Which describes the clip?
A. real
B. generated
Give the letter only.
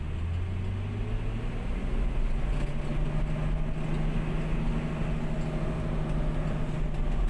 A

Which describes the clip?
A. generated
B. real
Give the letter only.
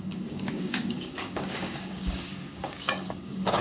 A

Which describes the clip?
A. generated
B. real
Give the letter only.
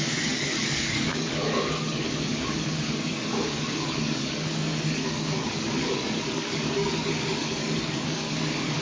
A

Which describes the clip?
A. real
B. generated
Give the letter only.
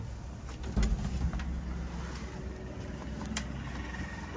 A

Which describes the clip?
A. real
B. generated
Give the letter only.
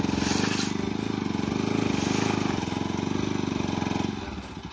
A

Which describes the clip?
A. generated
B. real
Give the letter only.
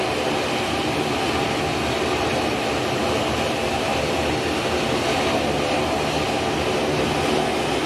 B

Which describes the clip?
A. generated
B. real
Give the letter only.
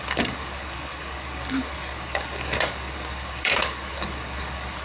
A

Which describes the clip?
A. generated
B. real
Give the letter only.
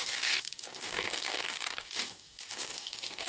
A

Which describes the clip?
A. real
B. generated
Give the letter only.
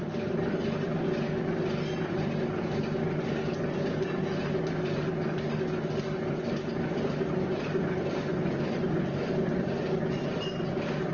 A